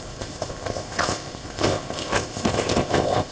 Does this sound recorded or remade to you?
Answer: remade